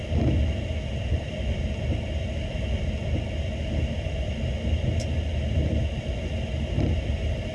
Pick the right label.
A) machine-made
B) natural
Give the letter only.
B